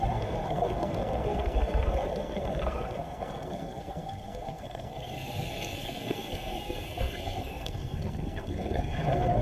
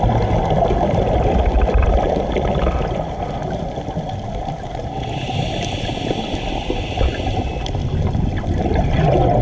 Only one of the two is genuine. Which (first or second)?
second